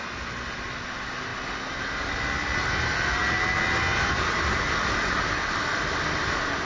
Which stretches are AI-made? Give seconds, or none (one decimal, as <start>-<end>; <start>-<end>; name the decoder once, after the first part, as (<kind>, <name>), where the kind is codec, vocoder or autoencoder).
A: 5.7-6.3 (vocoder, BigVGAN v2)